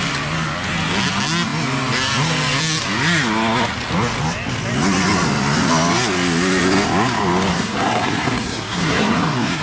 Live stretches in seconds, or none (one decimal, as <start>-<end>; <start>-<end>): 0.0-7.5